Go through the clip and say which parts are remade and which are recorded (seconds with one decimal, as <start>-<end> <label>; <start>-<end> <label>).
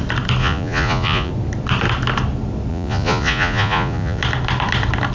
0.0-0.4 recorded; 0.4-1.3 remade; 1.3-2.7 recorded; 2.7-4.2 remade; 4.2-5.1 recorded